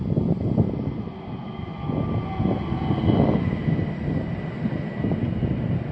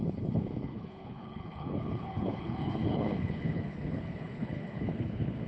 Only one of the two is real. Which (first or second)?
first